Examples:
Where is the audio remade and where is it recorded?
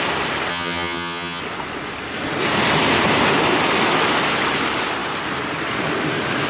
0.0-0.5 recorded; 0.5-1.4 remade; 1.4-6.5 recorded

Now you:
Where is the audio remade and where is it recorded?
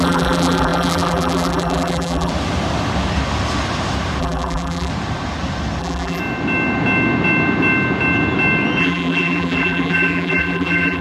0.0-2.3 remade; 2.3-4.2 recorded; 4.2-4.9 remade; 4.9-5.8 recorded; 5.8-6.2 remade; 6.2-8.8 recorded; 8.8-11.0 remade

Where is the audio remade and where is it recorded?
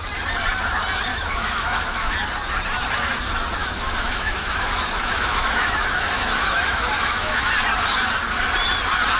0.0-1.1 recorded; 1.1-2.1 remade; 2.1-3.6 recorded; 3.6-7.5 remade; 7.5-9.2 recorded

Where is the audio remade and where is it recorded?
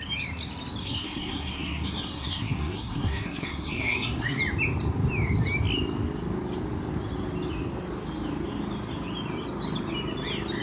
0.0-0.8 recorded; 0.8-4.4 remade; 4.4-10.6 recorded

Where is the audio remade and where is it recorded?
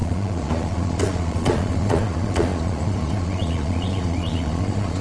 0.0-5.0 remade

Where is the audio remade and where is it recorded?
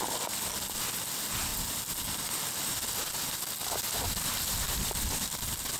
0.0-3.6 recorded; 3.6-5.3 remade; 5.3-5.8 recorded